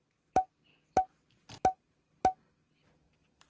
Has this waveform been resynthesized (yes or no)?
no